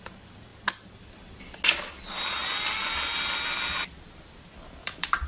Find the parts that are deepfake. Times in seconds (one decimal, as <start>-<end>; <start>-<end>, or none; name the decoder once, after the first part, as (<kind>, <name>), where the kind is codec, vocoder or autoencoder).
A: 0.0-0.5 (vocoder, BigVGAN v2); 1.9-2.4; 4.5-5.3